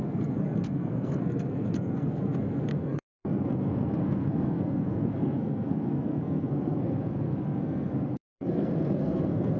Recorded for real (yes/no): no